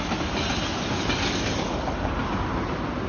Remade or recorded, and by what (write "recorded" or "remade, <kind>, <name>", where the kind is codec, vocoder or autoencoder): recorded